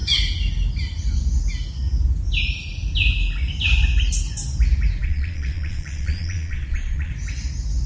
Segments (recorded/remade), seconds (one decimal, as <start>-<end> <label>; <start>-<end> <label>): 0.0-5.0 recorded; 5.0-7.1 remade; 7.1-7.9 recorded